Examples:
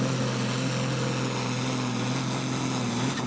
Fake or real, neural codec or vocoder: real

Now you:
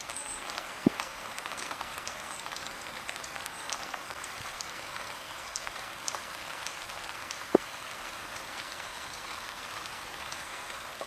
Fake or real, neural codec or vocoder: fake, codec, SNAC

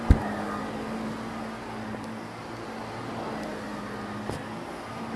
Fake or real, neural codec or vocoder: real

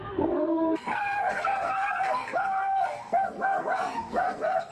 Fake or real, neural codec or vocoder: fake, codec, SNAC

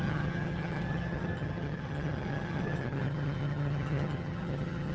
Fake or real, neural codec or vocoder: fake, vocoder, HiFi-GAN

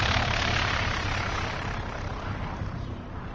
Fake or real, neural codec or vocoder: fake, vocoder, BigVGAN v2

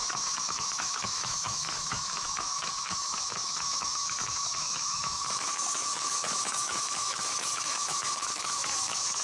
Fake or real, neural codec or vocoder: fake, autoencoder, DAC-VAE